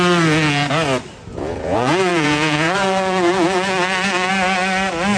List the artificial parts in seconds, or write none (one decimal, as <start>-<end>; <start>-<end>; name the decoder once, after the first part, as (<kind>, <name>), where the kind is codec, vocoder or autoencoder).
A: 1.3-4.3 (vocoder, Vocos)